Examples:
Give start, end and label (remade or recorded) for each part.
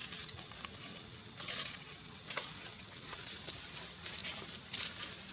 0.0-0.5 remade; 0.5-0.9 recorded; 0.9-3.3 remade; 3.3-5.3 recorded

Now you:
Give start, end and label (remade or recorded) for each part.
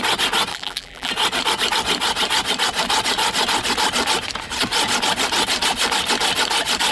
0.0-0.5 recorded; 0.5-1.1 remade; 1.1-6.9 recorded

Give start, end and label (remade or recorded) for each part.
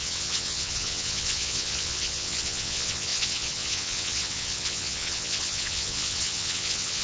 0.0-7.0 remade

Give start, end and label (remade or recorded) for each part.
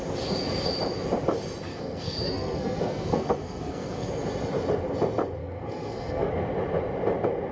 0.0-1.7 recorded; 1.7-4.1 remade; 4.1-5.4 recorded; 5.4-6.3 remade; 6.3-7.5 recorded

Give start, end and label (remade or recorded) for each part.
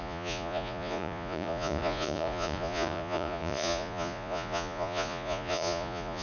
0.0-6.2 remade